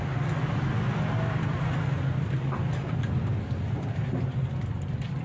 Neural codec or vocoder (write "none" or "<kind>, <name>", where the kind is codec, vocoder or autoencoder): none